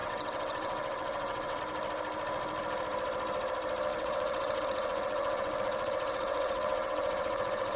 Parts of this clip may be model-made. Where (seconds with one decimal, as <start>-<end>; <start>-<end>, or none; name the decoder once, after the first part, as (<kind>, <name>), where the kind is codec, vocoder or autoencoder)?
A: 0.0-1.6 (vocoder, WaveNeXt); 3.9-7.8